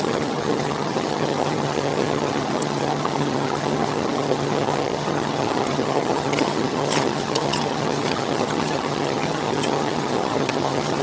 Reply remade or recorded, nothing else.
remade